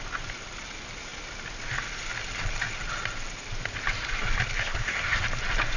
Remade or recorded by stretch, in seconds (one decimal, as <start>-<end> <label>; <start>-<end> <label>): 0.0-4.6 recorded; 4.6-5.2 remade; 5.2-5.8 recorded